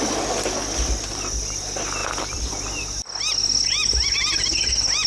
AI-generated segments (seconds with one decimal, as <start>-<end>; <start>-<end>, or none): none